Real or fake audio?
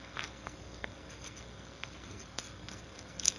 fake